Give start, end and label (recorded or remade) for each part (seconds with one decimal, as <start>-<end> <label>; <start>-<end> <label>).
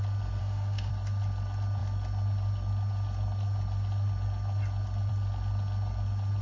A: 0.0-0.4 recorded; 0.4-0.9 remade; 0.9-6.4 recorded